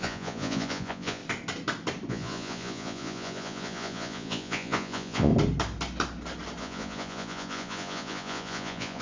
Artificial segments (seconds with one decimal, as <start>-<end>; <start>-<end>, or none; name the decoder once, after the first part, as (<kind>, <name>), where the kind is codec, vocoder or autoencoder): 0.0-1.2 (vocoder, Vocos); 2.1-5.3; 6.6-9.0